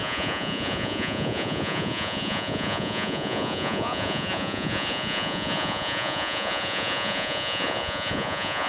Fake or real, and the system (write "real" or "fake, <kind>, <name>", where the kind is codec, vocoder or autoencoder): fake, vocoder, Vocos